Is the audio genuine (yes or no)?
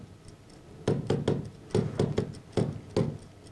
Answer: yes